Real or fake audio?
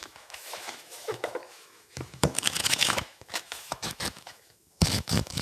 fake